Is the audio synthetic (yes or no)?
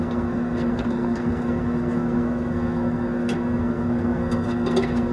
yes